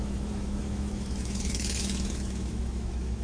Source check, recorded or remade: remade